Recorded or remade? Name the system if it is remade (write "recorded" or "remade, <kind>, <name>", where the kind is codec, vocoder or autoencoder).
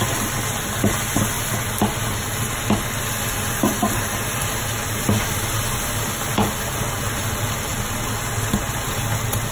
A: recorded